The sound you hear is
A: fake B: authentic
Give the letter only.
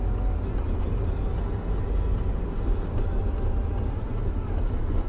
B